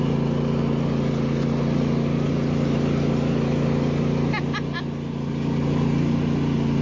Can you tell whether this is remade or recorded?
recorded